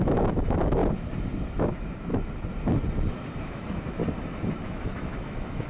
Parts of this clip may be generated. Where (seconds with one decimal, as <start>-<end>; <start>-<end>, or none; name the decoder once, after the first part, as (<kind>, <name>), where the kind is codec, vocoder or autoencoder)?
0.0-0.8 (autoencoder, DAC-VAE); 1.6-2.1; 3.4-4.0; 4.6-5.7